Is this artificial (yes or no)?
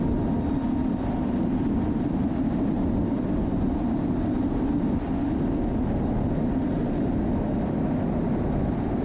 no